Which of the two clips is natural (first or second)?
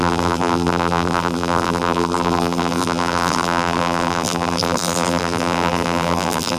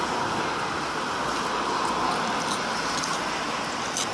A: second